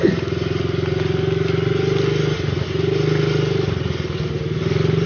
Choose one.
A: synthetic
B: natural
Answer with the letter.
B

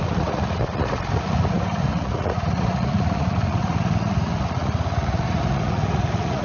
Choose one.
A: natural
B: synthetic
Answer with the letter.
B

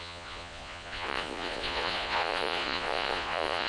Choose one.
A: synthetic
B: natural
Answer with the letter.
A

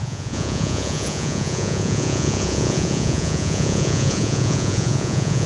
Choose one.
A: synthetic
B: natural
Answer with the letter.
A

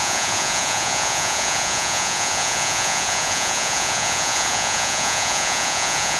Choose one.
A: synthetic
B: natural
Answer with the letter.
A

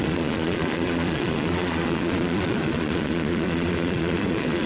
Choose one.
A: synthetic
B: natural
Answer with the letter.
A